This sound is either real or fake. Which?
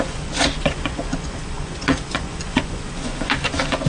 fake